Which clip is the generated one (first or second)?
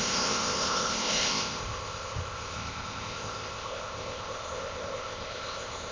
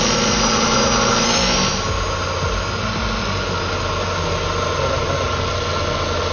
first